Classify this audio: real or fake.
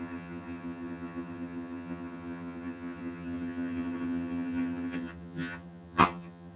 fake